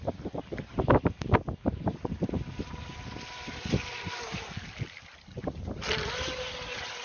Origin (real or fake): real